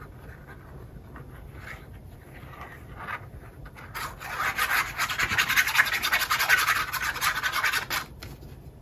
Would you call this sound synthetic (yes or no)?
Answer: no